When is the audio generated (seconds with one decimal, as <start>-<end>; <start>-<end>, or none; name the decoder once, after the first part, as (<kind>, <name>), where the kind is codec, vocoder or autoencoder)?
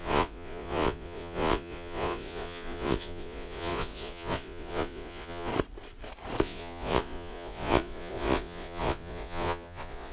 0.0-5.5 (vocoder, Vocos); 6.4-10.1